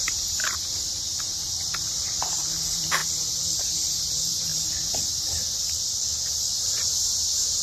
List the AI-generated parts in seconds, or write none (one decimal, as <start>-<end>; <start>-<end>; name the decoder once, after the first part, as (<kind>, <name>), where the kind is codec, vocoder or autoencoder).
0.0-0.4 (vocoder, BigVGAN v2); 2.2-3.0; 3.6-4.5; 6.6-7.6